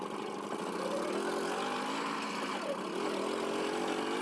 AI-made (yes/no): no